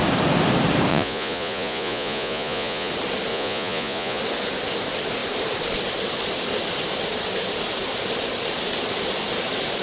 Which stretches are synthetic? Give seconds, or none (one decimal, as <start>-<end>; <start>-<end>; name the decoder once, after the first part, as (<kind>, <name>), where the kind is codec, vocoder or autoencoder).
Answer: 0.9-2.9 (vocoder, Vocos); 3.3-4.2